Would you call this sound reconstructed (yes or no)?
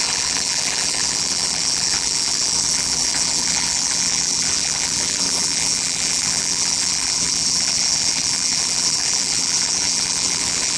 yes